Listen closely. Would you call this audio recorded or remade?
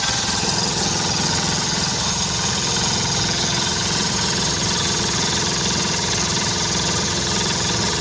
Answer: remade